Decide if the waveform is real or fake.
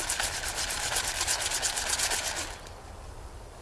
real